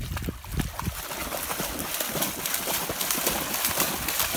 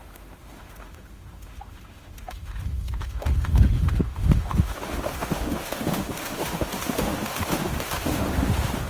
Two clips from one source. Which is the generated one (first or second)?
second